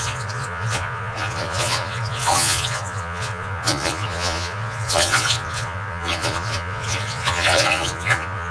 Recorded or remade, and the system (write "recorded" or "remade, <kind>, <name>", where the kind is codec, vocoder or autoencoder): remade, vocoder, Vocos